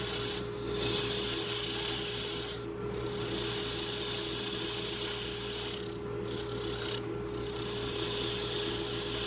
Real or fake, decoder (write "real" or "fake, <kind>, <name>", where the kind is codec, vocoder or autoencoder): real